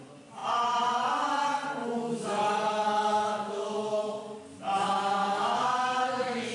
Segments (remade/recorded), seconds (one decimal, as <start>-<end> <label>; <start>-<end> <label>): 0.0-1.8 recorded; 1.8-4.1 remade; 4.1-5.2 recorded; 5.2-6.5 remade